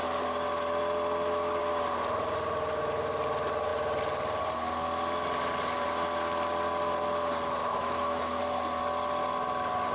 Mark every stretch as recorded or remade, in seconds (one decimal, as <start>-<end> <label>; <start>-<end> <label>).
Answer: 0.0-7.6 recorded; 7.6-8.4 remade; 8.4-9.9 recorded